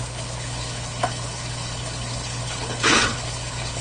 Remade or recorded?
remade